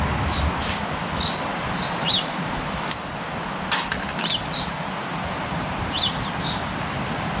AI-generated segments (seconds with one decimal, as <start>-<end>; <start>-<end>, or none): 1.5-3.1